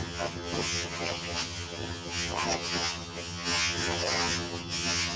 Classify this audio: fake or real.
fake